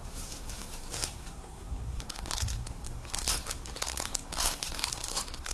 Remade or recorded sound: remade